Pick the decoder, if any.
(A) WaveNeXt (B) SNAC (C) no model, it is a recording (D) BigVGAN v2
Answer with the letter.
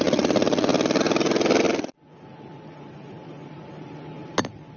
C